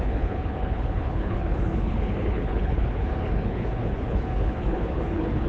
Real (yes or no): no